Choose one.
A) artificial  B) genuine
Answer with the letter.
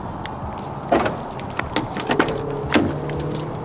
B